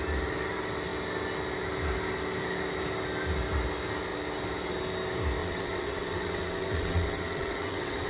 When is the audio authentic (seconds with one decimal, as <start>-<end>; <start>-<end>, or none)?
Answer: 0.0-5.4